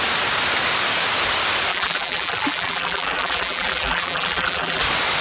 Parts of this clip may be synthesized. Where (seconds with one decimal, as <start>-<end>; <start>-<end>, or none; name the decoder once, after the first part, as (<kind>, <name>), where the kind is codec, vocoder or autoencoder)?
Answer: 1.7-4.8 (vocoder, BigVGAN v2)